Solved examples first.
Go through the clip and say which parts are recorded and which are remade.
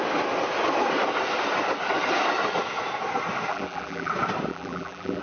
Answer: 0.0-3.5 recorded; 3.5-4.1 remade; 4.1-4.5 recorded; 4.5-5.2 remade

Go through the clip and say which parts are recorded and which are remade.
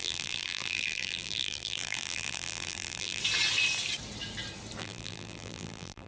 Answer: 0.0-3.2 remade; 3.2-4.8 recorded; 4.8-6.1 remade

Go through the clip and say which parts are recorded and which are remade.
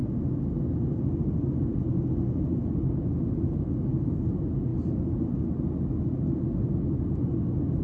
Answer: 0.0-7.8 recorded